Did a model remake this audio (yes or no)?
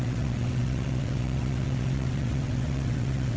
yes